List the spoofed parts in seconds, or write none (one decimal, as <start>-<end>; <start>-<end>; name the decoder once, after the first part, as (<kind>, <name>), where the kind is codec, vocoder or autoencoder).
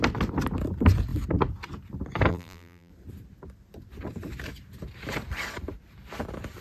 2.3-2.9 (vocoder, BigVGAN v2)